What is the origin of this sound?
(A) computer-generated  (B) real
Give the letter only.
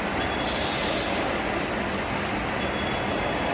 B